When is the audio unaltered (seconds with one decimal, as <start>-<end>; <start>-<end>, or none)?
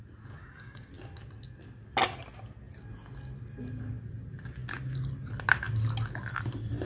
0.0-0.4; 0.9-6.9